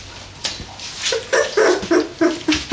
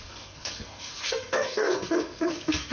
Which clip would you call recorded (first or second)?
first